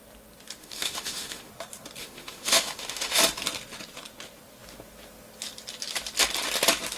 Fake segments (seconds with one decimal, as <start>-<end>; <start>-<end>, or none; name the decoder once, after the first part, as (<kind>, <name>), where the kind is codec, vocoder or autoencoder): 0.6-1.5 (autoencoder, DAC-VAE); 2.0-3.2